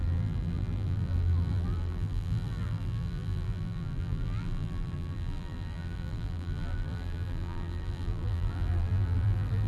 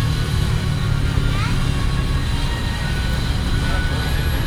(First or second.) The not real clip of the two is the first